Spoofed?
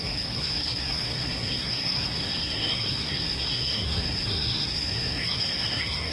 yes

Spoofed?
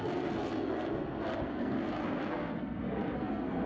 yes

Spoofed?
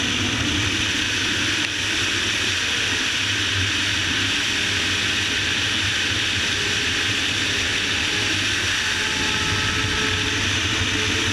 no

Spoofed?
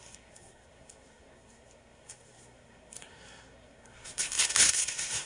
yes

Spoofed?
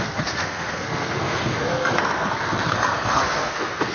yes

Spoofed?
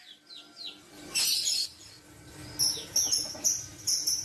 no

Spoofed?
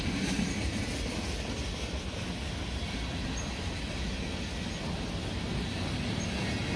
no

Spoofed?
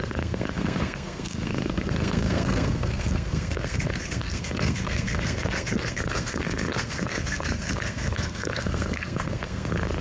yes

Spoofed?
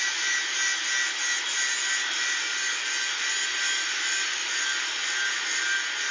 no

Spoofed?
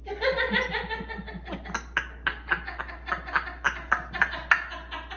no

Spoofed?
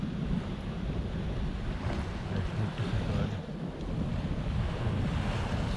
no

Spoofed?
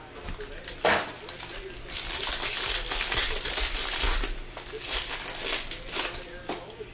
no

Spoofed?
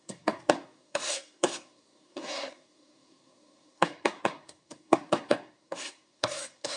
yes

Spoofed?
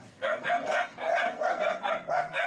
yes